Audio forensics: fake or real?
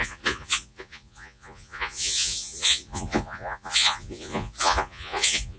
fake